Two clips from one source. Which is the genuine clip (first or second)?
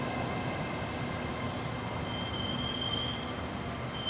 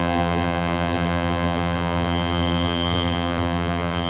first